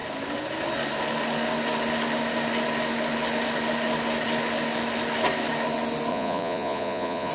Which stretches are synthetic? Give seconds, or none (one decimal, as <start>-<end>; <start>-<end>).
6.1-7.3